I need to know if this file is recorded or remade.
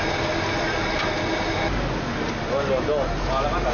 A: recorded